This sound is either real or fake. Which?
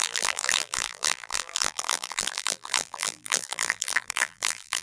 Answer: fake